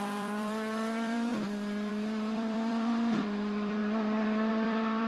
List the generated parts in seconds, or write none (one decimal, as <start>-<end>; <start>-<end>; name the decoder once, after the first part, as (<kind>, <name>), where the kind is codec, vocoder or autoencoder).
0.0-1.3 (vocoder, BigVGAN v2); 1.9-3.8; 4.5-5.1